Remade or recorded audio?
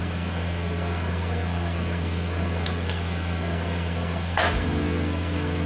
remade